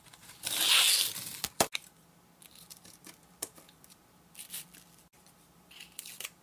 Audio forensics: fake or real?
real